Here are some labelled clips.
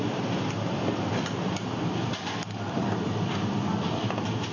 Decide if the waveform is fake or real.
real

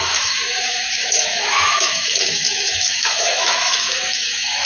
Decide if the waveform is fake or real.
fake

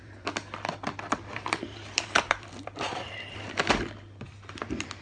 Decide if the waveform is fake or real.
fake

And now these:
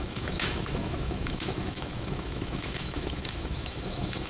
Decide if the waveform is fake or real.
fake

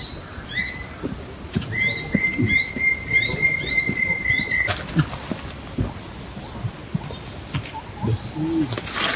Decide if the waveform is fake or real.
real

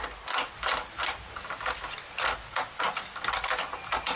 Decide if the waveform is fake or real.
real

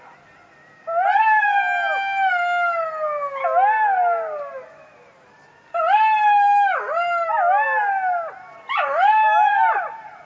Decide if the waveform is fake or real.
real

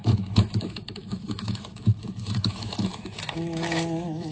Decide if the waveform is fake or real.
fake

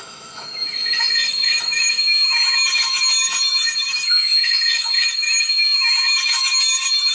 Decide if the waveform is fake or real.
fake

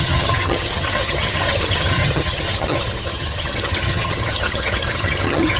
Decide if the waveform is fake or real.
fake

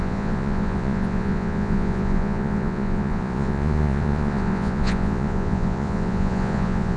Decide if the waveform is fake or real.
fake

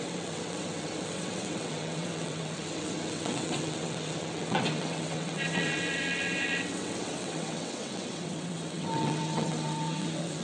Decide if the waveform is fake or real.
fake